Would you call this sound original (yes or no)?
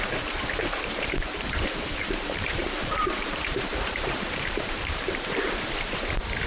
no